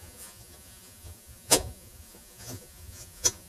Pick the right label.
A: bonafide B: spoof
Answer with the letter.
B